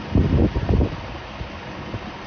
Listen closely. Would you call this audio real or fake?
real